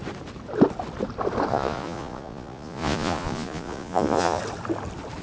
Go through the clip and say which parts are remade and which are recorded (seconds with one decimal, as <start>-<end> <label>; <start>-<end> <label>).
0.0-1.5 recorded; 1.5-4.4 remade; 4.4-5.2 recorded